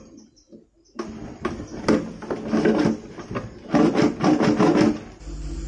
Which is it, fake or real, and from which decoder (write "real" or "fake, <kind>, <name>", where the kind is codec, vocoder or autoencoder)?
real